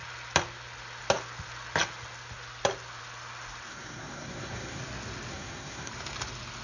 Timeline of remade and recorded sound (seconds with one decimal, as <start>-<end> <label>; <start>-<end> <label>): 0.0-3.7 recorded; 3.7-4.8 remade; 4.8-5.3 recorded; 5.3-5.9 remade; 5.9-6.6 recorded